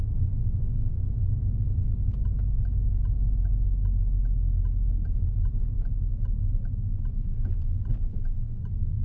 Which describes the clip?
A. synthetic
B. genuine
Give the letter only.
B